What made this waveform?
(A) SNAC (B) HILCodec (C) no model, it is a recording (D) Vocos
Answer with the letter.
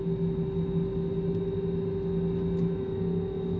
C